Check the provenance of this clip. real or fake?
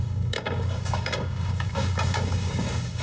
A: fake